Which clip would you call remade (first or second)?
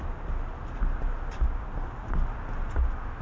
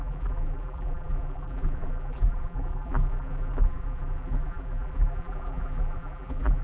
second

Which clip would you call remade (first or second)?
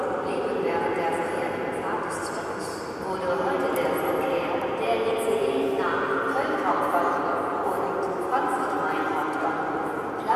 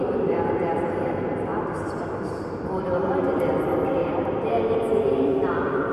second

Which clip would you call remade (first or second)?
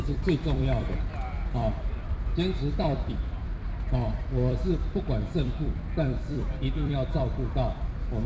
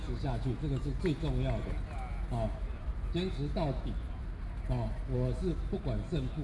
first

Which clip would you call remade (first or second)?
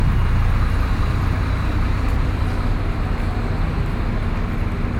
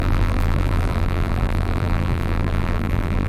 second